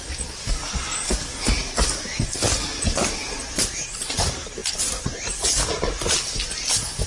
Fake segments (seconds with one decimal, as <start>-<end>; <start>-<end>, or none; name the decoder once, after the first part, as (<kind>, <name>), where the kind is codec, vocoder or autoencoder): none